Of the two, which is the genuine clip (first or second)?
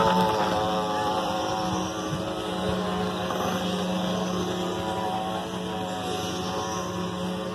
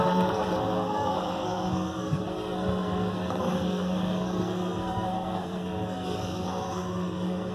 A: first